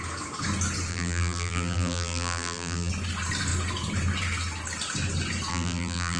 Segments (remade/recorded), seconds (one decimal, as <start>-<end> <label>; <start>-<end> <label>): 0.0-0.9 recorded; 0.9-2.9 remade; 2.9-5.5 recorded; 5.5-6.2 remade